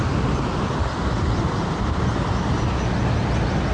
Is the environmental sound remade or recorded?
recorded